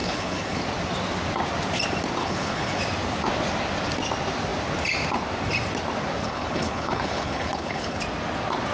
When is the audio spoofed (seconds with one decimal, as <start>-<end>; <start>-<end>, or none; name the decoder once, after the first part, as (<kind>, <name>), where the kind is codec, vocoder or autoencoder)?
0.0-0.6 (codec, HILCodec); 2.2-2.8; 6.2-8.0

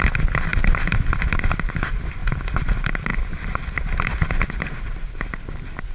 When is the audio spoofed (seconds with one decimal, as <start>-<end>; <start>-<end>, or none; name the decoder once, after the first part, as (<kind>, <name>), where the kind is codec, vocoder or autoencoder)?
0.0-0.5 (vocoder, BigVGAN v2); 1.5-5.9

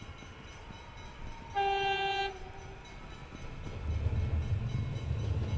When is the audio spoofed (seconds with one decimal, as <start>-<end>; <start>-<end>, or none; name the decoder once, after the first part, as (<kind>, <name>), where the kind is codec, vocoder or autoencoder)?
none

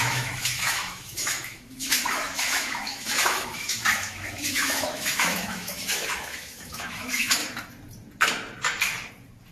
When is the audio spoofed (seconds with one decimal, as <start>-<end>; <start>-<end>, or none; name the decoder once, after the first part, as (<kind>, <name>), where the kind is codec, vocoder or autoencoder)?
0.0-7.4 (autoencoder, DAC-VAE)

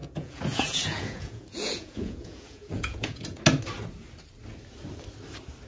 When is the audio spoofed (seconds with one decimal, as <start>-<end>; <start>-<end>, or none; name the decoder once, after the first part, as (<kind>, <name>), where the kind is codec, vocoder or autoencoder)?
0.0-3.4 (vocoder, Vocos)

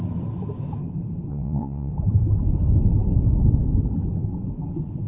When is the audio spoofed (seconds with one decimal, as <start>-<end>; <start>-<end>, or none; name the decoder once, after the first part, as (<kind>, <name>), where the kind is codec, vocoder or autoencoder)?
1.3-1.9 (vocoder, WaveNeXt)

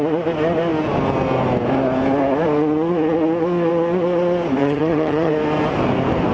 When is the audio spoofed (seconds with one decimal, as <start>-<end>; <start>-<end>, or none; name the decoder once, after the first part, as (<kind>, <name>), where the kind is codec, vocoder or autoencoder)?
4.6-5.3 (vocoder, HiFi-GAN)

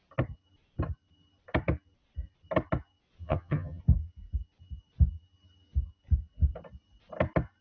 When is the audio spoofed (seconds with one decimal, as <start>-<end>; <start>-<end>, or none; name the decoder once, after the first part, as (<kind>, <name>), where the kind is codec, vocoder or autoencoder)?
3.2-3.8 (vocoder, HiFi-GAN)